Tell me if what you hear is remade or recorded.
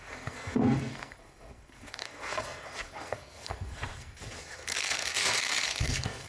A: remade